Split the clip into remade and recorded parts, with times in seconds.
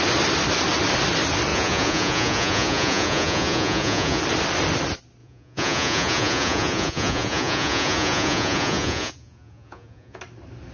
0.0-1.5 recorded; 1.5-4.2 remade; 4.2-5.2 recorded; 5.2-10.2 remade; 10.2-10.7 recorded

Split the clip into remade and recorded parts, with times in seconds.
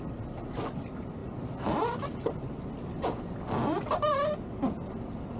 0.0-5.4 recorded